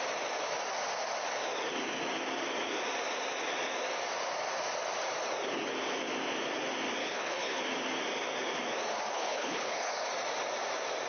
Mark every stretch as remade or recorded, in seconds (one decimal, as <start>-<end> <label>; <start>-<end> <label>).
0.0-7.0 recorded; 7.0-7.6 remade; 7.6-9.1 recorded; 9.1-9.9 remade; 9.9-11.1 recorded